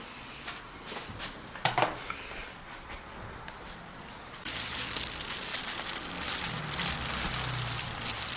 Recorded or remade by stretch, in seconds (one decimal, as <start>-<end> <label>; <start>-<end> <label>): 0.0-2.4 recorded; 2.4-4.8 remade; 4.8-8.4 recorded